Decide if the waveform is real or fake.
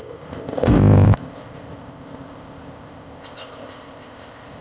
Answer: fake